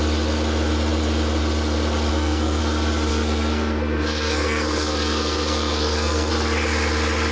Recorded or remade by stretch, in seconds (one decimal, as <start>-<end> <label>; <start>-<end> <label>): 0.0-2.1 recorded; 2.1-2.6 remade; 2.6-3.1 recorded; 3.1-6.3 remade; 6.3-7.3 recorded

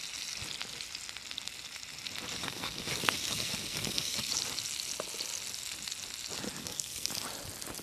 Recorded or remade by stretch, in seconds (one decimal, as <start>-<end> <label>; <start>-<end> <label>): 0.0-2.4 recorded; 2.4-4.3 remade; 4.3-6.6 recorded; 6.6-7.1 remade; 7.1-7.8 recorded